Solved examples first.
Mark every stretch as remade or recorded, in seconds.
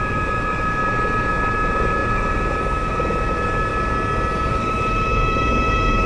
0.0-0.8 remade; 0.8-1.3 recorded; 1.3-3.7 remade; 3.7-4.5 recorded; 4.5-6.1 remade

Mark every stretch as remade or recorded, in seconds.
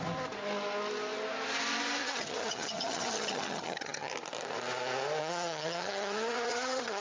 0.0-2.0 recorded; 2.0-4.1 remade; 4.1-5.2 recorded; 5.2-7.0 remade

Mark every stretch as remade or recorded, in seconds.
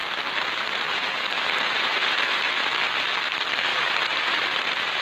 0.0-2.4 remade; 2.4-3.7 recorded; 3.7-5.0 remade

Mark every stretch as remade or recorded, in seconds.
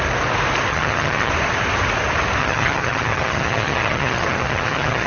0.0-0.7 recorded; 0.7-1.3 remade; 1.3-2.4 recorded; 2.4-5.1 remade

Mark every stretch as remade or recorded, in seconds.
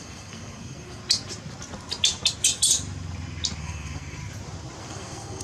0.0-1.0 remade; 1.0-3.6 recorded; 3.6-4.2 remade; 4.2-4.8 recorded; 4.8-5.4 remade